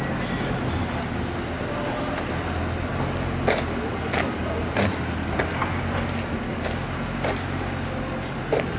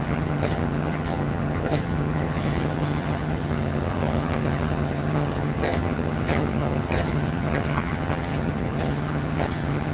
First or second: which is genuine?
first